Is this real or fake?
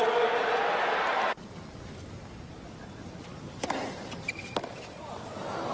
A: real